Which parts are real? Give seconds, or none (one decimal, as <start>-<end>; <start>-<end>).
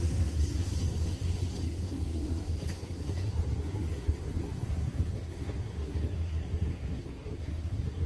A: none